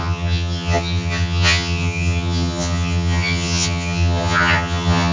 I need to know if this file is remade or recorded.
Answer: remade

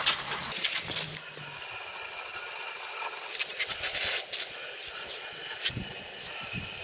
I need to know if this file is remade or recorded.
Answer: recorded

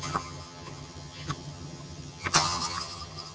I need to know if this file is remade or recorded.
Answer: remade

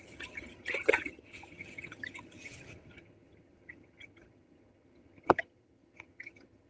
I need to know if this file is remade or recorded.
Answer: remade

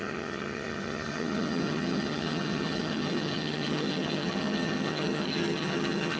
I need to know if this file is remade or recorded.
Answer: remade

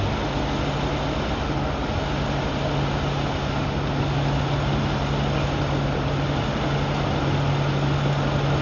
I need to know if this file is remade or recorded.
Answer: recorded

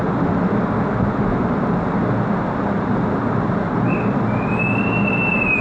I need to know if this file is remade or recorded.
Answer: recorded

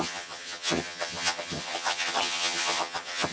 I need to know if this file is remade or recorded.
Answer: remade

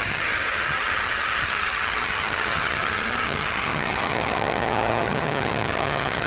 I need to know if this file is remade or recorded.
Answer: remade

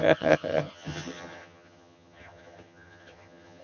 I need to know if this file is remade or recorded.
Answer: remade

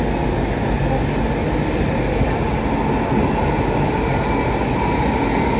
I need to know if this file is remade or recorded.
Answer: recorded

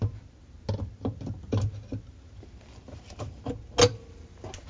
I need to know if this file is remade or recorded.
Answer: recorded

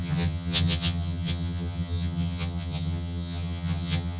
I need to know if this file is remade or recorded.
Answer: remade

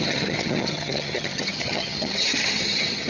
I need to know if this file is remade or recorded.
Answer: remade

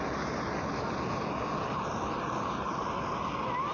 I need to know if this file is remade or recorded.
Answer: recorded